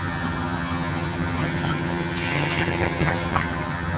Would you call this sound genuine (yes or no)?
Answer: no